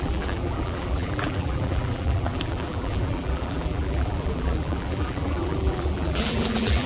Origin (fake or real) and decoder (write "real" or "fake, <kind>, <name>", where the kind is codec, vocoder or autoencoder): fake, vocoder, BigVGAN v2